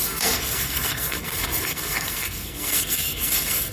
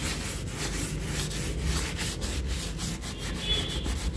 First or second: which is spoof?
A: first